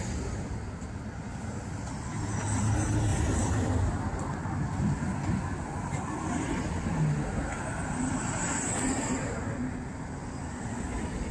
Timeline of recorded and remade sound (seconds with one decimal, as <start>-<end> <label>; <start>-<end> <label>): 0.0-1.3 recorded; 1.3-2.1 remade; 2.1-11.3 recorded

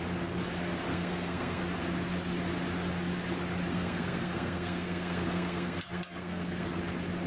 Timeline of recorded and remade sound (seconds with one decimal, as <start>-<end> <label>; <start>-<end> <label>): 0.0-0.9 recorded; 0.9-1.6 remade; 1.6-3.7 recorded; 3.7-6.8 remade; 6.8-7.3 recorded

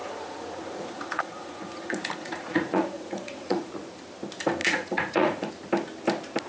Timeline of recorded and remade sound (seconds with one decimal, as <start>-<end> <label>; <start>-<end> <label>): 0.0-3.7 remade; 3.7-4.6 recorded; 4.6-5.5 remade; 5.5-6.5 recorded